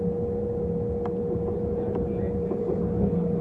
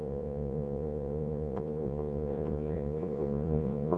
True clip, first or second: first